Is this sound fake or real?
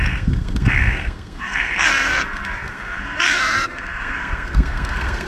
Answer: fake